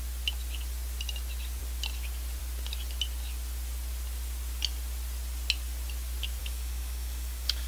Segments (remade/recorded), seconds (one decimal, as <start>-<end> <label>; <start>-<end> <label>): 0.0-6.4 recorded; 6.4-7.7 remade